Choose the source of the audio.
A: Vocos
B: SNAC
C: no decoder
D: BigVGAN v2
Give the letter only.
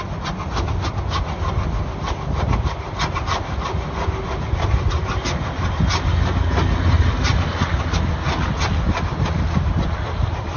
C